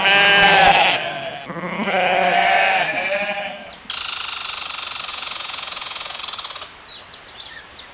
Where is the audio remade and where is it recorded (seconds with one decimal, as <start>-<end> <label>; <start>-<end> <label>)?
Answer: 0.0-5.1 recorded; 5.1-6.2 remade; 6.2-7.9 recorded